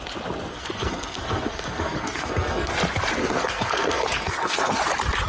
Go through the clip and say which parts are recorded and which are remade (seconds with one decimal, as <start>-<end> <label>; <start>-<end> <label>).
0.0-0.5 recorded; 0.5-2.7 remade; 2.7-3.2 recorded; 3.2-4.8 remade; 4.8-5.3 recorded